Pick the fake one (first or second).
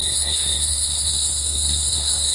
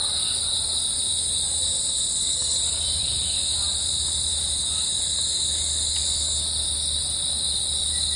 first